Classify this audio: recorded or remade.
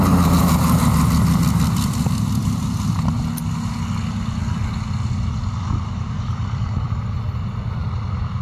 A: recorded